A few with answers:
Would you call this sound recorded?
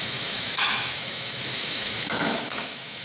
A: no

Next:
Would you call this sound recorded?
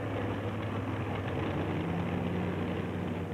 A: yes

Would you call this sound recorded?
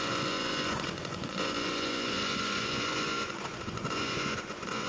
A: no